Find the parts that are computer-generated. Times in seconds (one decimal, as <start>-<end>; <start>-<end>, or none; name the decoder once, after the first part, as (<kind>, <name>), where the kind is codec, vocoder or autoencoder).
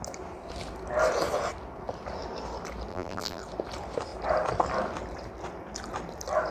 2.9-3.4 (vocoder, BigVGAN v2)